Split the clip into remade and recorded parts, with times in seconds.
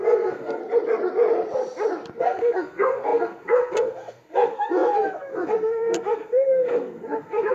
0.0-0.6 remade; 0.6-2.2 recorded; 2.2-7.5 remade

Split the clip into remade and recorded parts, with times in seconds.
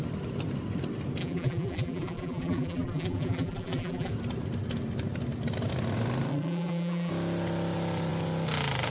0.0-1.2 recorded; 1.2-4.1 remade; 4.1-6.3 recorded; 6.3-7.1 remade; 7.1-8.9 recorded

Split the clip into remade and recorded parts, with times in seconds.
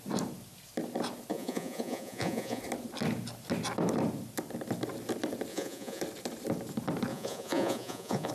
0.0-1.3 recorded; 1.3-2.6 remade; 2.6-5.5 recorded; 5.5-6.0 remade; 6.0-7.1 recorded; 7.1-8.3 remade